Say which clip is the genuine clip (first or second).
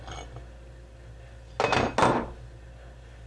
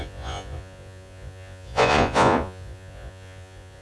first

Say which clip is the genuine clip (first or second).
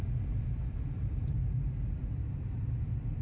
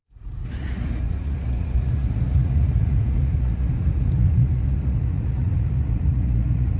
first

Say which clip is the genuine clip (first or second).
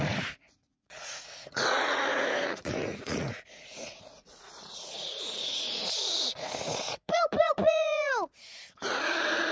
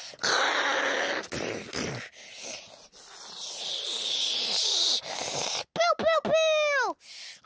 second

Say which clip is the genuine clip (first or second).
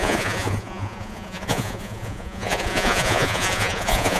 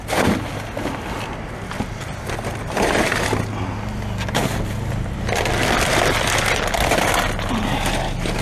second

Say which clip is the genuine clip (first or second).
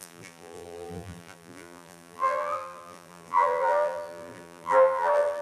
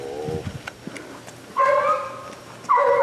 second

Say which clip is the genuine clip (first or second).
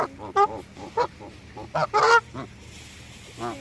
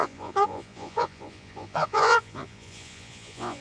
first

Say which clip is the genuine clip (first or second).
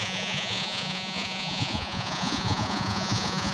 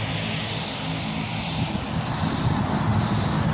second